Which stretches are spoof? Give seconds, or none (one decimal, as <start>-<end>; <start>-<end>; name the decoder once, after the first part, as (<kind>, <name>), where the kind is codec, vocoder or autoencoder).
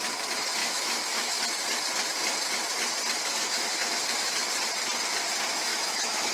0.6-1.4 (autoencoder, DAC-VAE); 3.2-4.4; 5.7-6.3